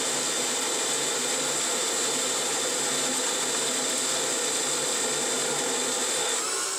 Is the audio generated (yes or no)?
no